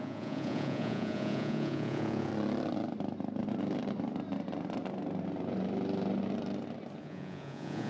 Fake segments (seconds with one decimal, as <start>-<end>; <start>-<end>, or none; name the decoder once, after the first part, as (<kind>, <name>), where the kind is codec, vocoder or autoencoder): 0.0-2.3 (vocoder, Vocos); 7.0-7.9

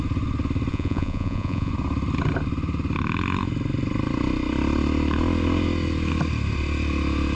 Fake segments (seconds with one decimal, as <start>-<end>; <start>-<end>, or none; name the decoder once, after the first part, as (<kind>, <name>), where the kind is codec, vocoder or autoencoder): 0.7-1.7 (vocoder, Vocos)

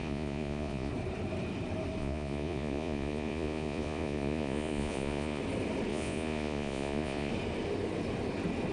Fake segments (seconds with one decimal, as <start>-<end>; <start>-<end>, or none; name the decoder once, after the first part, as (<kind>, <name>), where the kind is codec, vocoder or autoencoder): 0.0-0.9 (vocoder, Vocos); 2.0-5.4; 5.9-7.3

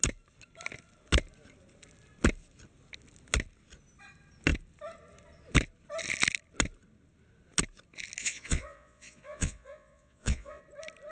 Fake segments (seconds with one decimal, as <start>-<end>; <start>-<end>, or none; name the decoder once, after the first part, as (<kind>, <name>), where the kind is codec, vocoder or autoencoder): 8.2-10.6 (vocoder, Vocos)

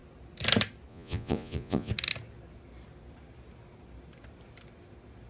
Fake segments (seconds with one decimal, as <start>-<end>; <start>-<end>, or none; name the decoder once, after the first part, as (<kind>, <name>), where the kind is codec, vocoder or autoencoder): 0.9-1.9 (vocoder, Vocos)